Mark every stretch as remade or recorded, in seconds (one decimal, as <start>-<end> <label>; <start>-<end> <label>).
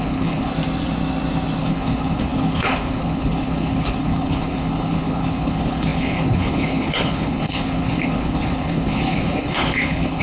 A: 0.0-0.5 remade; 0.5-1.6 recorded; 1.6-10.2 remade